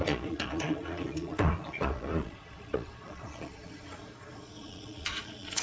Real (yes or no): no